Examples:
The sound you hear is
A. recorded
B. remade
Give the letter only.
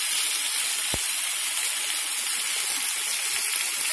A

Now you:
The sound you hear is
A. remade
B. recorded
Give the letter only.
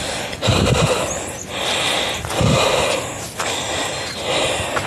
B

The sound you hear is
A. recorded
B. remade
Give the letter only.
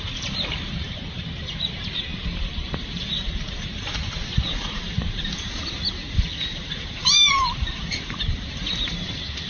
B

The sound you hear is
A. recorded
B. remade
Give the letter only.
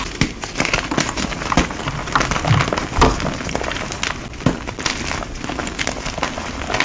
A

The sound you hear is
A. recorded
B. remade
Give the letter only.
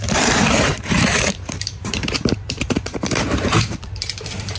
B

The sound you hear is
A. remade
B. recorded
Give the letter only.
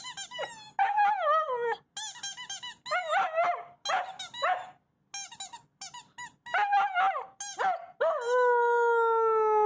B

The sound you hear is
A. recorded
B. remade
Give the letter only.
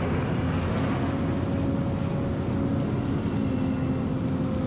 A